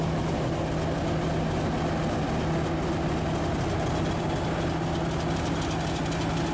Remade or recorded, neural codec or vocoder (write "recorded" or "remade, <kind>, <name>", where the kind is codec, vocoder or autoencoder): recorded